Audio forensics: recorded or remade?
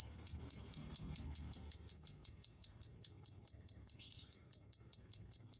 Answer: remade